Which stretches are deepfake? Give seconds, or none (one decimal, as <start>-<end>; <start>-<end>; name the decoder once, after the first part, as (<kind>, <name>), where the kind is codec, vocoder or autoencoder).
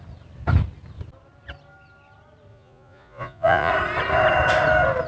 2.5-3.7 (vocoder, Vocos)